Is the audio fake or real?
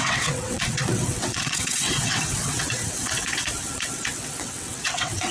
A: fake